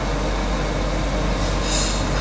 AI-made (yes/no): no